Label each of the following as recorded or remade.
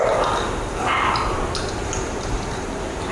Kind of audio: recorded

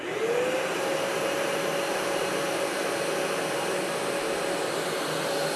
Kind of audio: recorded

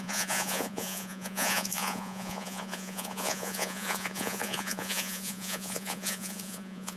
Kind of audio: remade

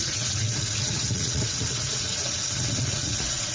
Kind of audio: remade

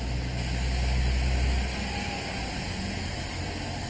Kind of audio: recorded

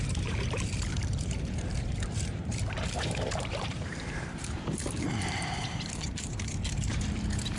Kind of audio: remade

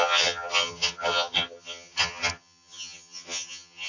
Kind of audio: remade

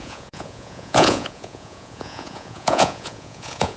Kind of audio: remade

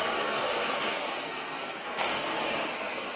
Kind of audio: remade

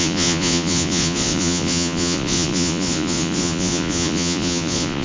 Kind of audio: remade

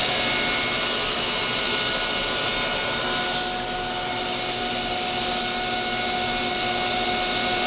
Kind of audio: recorded